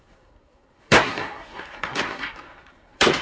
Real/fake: fake